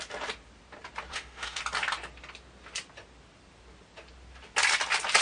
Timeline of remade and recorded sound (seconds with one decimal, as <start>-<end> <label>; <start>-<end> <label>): 0.0-1.1 recorded; 1.1-1.6 remade; 1.6-5.2 recorded